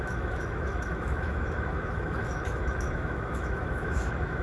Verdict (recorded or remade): remade